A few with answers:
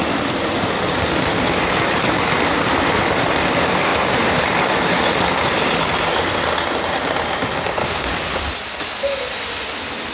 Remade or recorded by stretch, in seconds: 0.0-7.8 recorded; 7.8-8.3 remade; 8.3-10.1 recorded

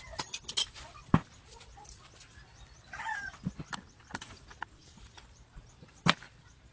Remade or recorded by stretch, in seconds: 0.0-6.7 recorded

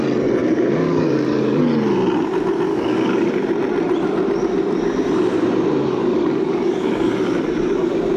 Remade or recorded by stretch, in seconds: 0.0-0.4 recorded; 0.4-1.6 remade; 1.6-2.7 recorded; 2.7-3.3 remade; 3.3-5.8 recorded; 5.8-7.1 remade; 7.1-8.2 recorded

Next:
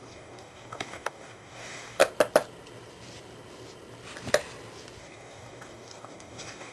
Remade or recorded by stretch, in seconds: 0.0-2.0 remade; 2.0-5.0 recorded; 5.0-6.7 remade

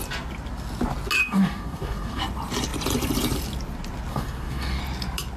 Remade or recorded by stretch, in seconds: 0.0-1.2 recorded; 1.2-2.2 remade; 2.2-4.1 recorded; 4.1-4.8 remade; 4.8-5.4 recorded